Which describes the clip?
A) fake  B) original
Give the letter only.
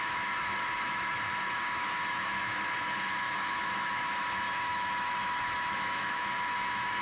A